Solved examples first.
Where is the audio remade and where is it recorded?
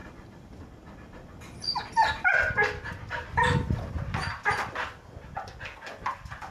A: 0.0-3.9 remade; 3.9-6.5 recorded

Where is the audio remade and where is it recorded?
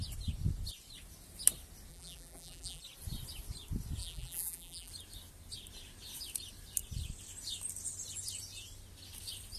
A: 0.0-1.9 recorded; 1.9-2.8 remade; 2.8-4.0 recorded; 4.0-4.9 remade; 4.9-9.6 recorded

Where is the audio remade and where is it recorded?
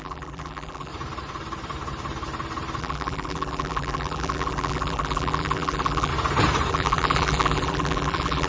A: 0.0-0.9 remade; 0.9-2.8 recorded; 2.8-6.1 remade; 6.1-6.7 recorded; 6.7-8.5 remade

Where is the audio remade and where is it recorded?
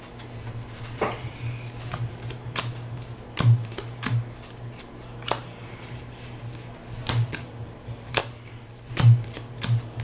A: 0.0-5.1 recorded; 5.1-6.4 remade; 6.4-10.0 recorded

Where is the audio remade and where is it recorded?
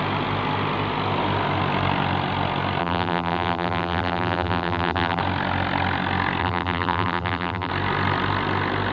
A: 0.0-2.8 recorded; 2.8-5.2 remade; 5.2-6.4 recorded; 6.4-7.7 remade; 7.7-8.9 recorded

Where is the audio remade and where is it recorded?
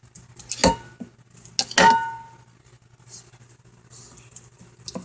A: 0.0-5.0 recorded